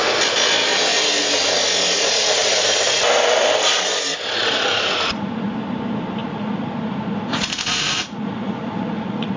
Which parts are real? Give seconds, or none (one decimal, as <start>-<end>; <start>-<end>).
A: 0.0-4.4; 5.5-6.2